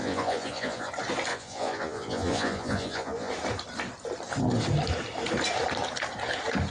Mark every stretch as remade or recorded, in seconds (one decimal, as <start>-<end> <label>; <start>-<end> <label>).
0.0-0.9 remade; 0.9-1.3 recorded; 1.3-3.3 remade; 3.3-6.7 recorded